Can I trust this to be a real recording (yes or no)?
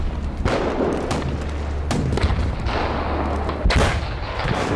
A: yes